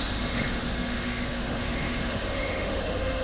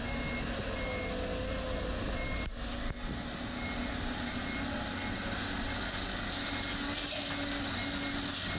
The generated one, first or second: first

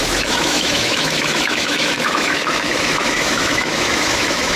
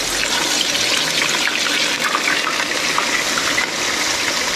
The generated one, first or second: first